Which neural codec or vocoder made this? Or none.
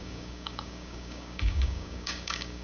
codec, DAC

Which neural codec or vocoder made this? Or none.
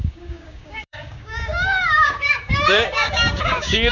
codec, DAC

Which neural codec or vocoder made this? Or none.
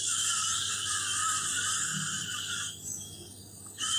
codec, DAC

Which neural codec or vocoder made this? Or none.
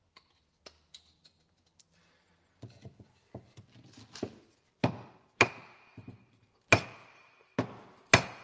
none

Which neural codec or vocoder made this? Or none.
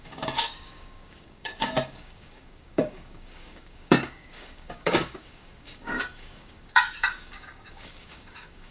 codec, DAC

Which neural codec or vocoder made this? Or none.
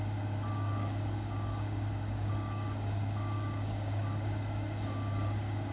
codec, DAC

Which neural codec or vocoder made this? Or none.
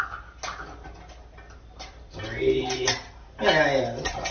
none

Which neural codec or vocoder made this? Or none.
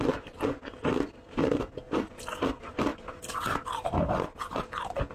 none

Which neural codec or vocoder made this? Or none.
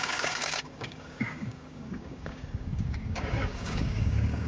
codec, DAC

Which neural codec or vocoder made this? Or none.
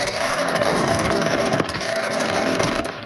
codec, DAC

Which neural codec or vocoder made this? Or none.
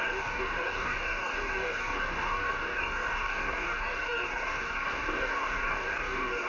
codec, DAC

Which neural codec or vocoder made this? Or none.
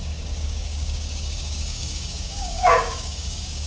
codec, DAC